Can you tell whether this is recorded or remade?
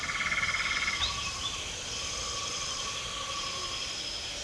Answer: recorded